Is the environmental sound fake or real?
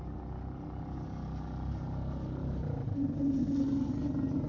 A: real